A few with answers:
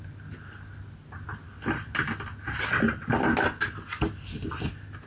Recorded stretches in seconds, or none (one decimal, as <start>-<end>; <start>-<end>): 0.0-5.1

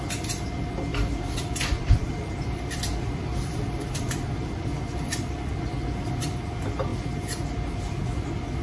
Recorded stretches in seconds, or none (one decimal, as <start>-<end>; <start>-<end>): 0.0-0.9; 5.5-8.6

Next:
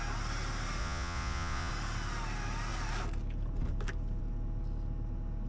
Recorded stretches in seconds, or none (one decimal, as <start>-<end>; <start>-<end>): 0.0-0.8; 1.7-5.5